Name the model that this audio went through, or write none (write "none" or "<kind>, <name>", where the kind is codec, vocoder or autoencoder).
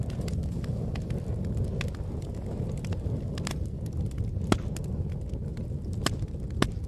none